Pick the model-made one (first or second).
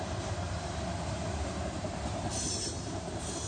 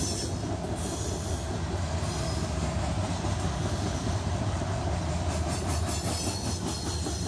first